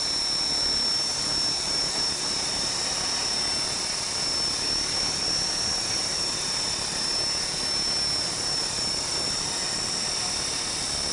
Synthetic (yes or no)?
no